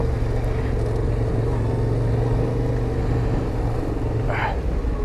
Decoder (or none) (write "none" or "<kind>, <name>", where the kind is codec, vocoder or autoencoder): none